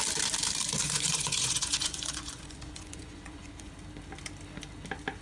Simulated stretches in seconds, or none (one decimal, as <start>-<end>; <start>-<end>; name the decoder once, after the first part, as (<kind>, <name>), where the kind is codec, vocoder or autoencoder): 0.8-3.7 (vocoder, Vocos)